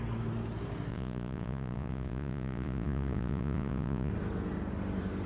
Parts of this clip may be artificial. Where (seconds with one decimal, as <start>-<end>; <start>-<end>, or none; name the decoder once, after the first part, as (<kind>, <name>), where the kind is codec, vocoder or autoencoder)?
0.9-4.1 (vocoder, Vocos)

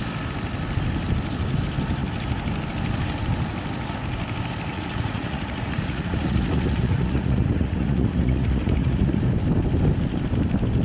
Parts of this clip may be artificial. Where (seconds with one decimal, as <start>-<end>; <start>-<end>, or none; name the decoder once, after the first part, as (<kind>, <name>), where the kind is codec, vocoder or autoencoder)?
4.7-9.2 (vocoder, Vocos)